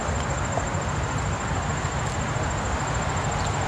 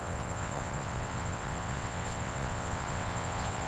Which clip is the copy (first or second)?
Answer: second